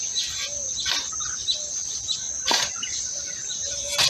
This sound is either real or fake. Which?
real